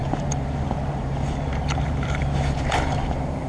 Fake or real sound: fake